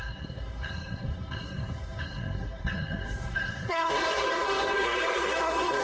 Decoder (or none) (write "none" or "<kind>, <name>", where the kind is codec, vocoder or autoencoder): codec, SNAC